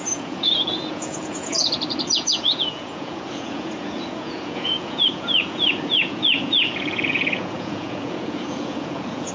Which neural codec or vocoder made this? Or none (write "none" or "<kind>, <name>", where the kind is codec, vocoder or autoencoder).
vocoder, Vocos